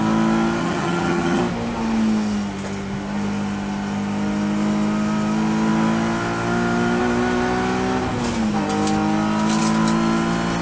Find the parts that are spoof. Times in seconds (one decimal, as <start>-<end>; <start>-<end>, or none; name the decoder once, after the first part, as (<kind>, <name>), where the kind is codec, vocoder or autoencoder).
0.6-1.4 (vocoder, HiFi-GAN)